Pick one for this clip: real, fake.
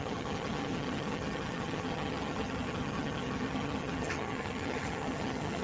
fake